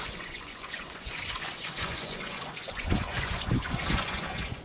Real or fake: fake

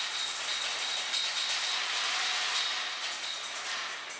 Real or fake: real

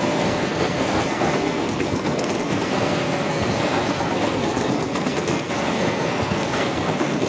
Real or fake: fake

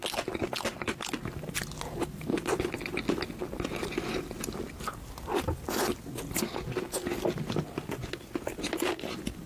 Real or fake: real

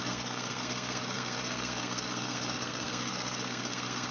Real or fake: fake